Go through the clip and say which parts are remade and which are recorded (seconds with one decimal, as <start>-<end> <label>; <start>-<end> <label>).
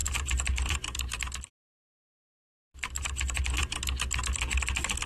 0.0-1.2 remade; 1.2-2.6 recorded; 2.6-3.4 remade; 3.4-5.1 recorded